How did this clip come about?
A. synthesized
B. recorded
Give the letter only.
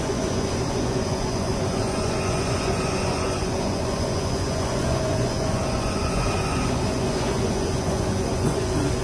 A